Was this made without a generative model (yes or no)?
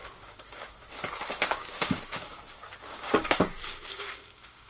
no